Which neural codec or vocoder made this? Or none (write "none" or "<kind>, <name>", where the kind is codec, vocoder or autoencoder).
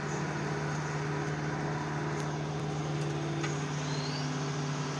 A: none